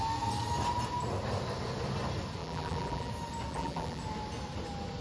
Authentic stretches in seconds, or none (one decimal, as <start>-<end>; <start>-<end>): 0.0-2.4; 3.1-3.5; 4.0-5.0